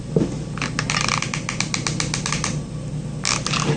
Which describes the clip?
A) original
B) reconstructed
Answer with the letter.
A